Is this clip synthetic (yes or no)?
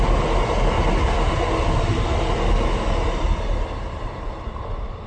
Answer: no